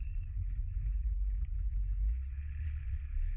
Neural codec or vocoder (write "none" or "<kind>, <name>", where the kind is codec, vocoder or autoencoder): codec, HILCodec